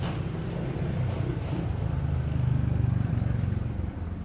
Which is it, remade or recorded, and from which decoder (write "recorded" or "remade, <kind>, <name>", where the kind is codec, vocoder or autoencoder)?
recorded